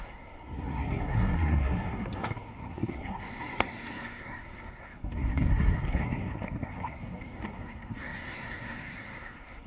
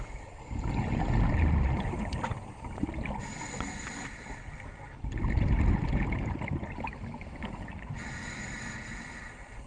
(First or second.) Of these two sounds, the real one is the second